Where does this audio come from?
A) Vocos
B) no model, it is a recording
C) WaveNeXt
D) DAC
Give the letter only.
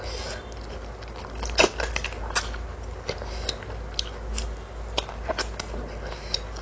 B